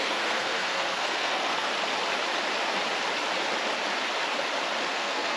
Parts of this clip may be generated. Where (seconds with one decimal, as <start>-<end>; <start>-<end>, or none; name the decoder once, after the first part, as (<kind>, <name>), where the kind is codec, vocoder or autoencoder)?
0.0-1.7 (codec, SNAC); 4.9-5.4